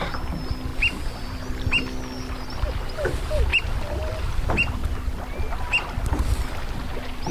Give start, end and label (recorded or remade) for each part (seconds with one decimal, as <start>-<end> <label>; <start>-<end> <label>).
0.0-0.7 recorded; 0.7-1.5 remade; 1.5-3.5 recorded; 3.5-4.5 remade; 4.5-7.3 recorded